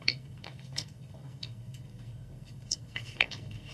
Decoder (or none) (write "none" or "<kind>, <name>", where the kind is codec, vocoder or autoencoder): codec, SNAC